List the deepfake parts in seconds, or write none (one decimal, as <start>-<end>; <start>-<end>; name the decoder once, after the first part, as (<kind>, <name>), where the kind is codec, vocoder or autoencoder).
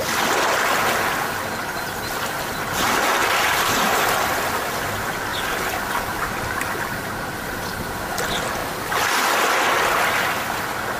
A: none